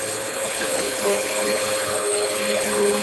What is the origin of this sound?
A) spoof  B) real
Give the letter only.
A